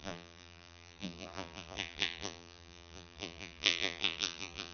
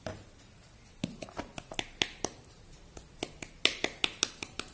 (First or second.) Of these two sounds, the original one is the second